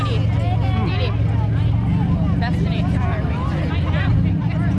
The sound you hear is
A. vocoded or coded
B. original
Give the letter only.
B